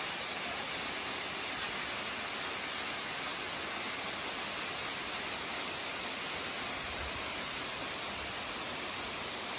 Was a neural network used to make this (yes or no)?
no